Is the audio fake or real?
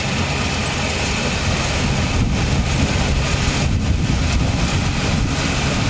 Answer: real